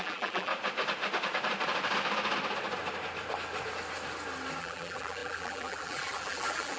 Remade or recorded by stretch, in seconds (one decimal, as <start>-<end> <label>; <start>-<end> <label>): 0.0-0.5 remade; 0.5-4.6 recorded; 4.6-6.8 remade